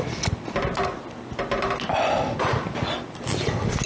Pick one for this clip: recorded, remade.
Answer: recorded